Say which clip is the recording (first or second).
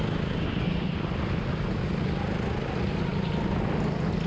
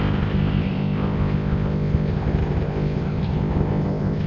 first